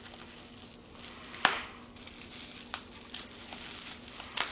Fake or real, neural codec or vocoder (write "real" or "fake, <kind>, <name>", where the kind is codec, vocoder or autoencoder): real